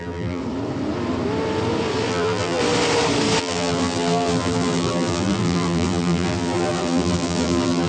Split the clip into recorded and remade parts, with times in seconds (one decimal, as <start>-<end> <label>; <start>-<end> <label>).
0.0-0.4 remade; 0.4-2.1 recorded; 2.1-2.6 remade; 2.6-3.4 recorded; 3.4-7.9 remade